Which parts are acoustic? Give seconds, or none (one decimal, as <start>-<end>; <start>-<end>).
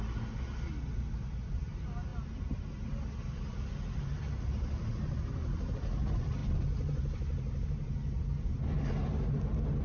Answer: 0.0-9.8